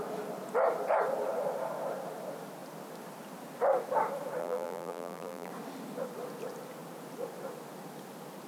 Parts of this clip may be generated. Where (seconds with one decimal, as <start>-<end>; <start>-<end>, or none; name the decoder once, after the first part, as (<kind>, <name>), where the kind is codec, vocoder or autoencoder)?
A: 4.4-5.5 (vocoder, BigVGAN v2)